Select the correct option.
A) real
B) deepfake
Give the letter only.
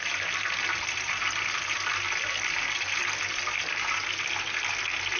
A